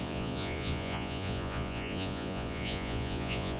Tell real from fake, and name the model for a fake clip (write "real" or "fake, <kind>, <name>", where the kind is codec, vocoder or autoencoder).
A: fake, vocoder, Vocos